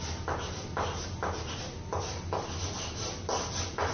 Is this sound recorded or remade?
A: recorded